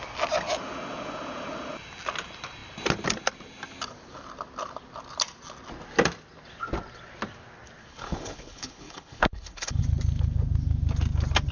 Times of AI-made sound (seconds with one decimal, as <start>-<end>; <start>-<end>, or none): 7.8-9.8